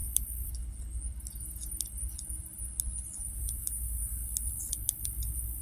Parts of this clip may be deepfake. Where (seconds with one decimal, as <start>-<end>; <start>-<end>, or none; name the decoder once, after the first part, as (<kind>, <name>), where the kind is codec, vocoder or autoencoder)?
none